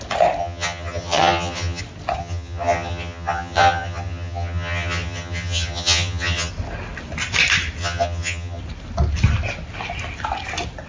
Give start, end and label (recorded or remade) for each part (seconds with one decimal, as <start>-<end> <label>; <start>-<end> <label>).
0.0-0.4 recorded; 0.4-1.8 remade; 1.8-2.2 recorded; 2.2-6.5 remade; 6.5-7.8 recorded; 7.8-8.6 remade; 8.6-10.9 recorded